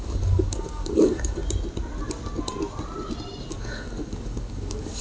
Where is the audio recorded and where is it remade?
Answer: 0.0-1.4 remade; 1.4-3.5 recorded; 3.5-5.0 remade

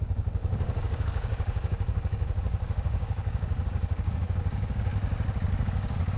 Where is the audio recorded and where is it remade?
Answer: 0.0-4.9 remade; 4.9-5.6 recorded; 5.6-6.2 remade

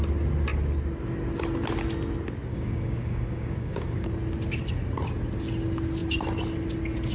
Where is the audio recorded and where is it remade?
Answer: 0.0-2.5 recorded; 2.5-4.1 remade; 4.1-7.1 recorded

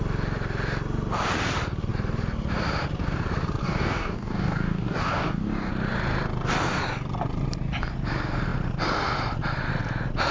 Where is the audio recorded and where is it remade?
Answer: 0.0-3.6 recorded; 3.6-5.7 remade; 5.7-10.3 recorded

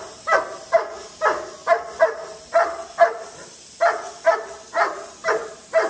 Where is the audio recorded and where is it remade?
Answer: 0.0-5.9 recorded

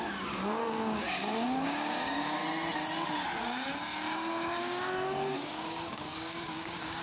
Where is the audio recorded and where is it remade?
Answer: 0.0-2.4 remade; 2.4-4.6 recorded; 4.6-7.0 remade

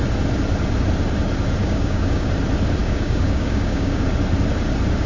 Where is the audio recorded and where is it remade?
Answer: 0.0-1.6 recorded; 1.6-2.3 remade; 2.3-2.8 recorded; 2.8-4.1 remade; 4.1-5.1 recorded

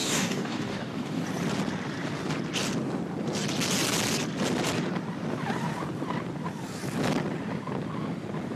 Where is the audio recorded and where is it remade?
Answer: 0.0-1.2 remade; 1.2-8.6 recorded